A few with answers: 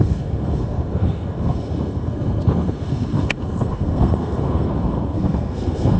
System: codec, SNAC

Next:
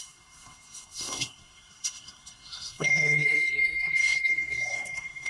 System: codec, SNAC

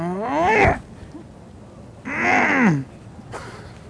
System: none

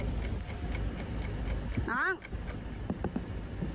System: none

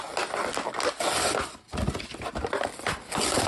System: none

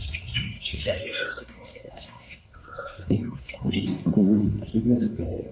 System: codec, SNAC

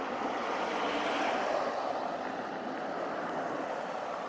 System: none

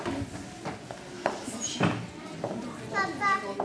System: none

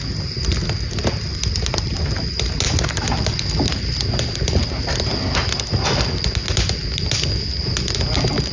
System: none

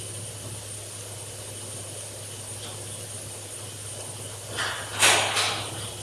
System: none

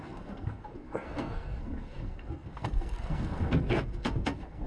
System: codec, SNAC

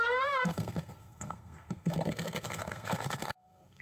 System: codec, SNAC